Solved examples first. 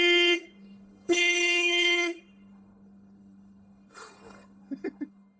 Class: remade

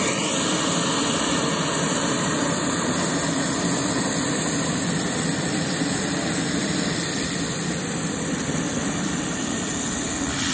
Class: remade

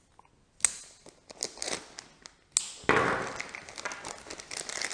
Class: recorded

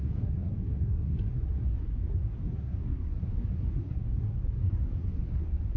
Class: remade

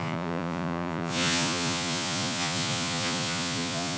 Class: remade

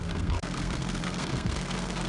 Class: remade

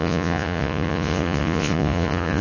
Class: remade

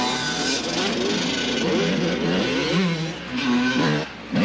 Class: recorded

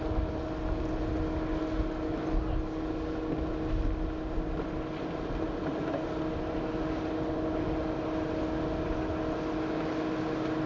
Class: recorded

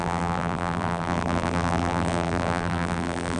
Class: remade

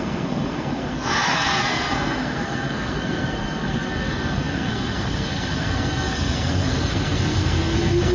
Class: remade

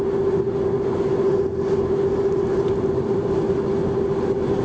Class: recorded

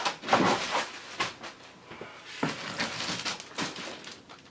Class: recorded